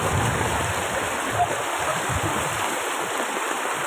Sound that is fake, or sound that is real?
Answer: real